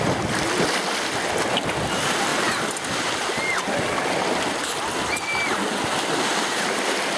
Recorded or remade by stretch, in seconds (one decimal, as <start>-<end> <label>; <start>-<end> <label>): 0.0-7.2 recorded